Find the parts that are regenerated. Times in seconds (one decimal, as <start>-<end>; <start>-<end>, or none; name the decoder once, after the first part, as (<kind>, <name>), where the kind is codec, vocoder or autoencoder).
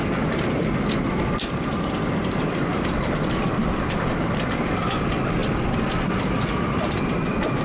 1.2-5.4 (vocoder, BigVGAN v2); 6.3-7.6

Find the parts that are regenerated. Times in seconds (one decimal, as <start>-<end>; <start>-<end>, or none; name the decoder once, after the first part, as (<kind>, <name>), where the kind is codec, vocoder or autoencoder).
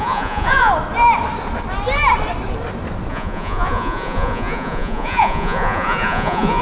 0.0-0.7 (vocoder, Vocos); 3.1-6.6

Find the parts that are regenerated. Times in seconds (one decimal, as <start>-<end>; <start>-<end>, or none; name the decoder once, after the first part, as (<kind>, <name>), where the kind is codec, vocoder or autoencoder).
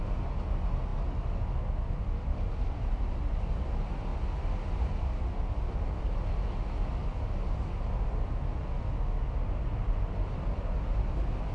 none